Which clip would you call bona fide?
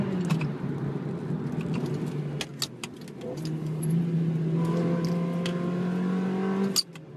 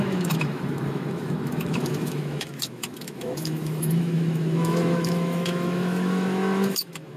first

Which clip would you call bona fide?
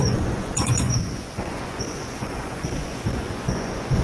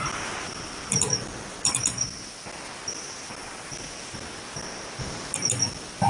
second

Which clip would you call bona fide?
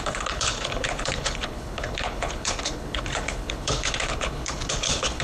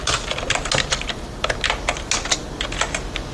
second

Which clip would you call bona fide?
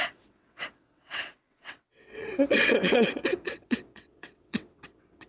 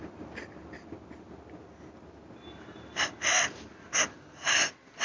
second